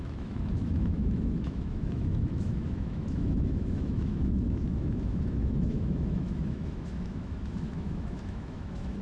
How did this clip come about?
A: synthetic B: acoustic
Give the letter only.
A